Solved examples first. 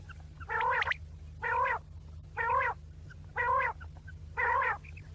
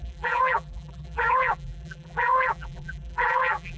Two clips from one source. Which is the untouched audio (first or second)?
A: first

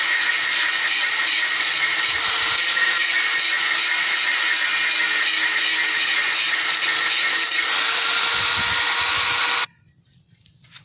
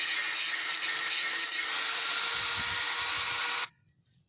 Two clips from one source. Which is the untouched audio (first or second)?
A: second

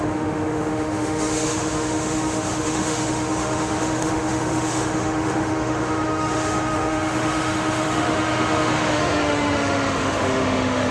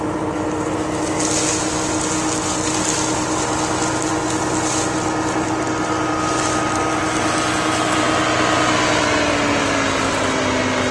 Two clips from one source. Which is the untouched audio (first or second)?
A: second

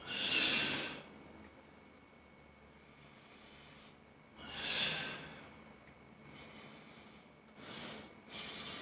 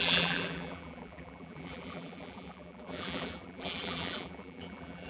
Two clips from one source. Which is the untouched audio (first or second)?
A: first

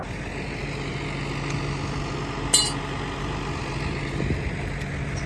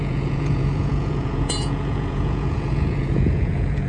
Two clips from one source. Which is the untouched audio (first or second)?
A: first